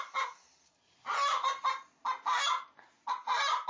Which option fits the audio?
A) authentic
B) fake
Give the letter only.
A